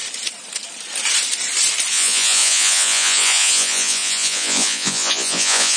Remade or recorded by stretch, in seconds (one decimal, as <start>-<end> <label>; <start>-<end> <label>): 0.0-1.9 recorded; 1.9-5.8 remade